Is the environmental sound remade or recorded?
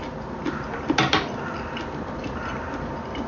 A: recorded